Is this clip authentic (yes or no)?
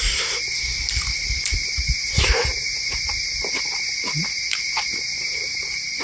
no